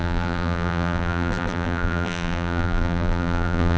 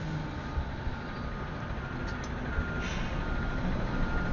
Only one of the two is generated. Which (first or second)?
first